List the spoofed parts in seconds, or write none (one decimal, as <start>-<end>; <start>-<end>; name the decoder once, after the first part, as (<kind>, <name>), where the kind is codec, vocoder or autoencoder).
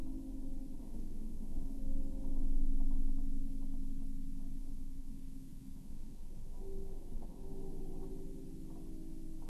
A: 0.8-1.8 (codec, SNAC); 4.6-7.5